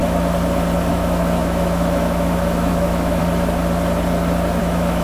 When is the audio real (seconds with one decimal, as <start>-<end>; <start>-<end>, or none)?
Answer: 0.0-0.9; 3.2-4.6